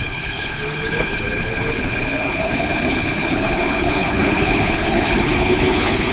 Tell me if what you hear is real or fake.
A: fake